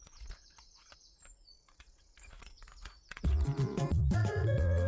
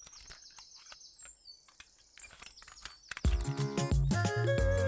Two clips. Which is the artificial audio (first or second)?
first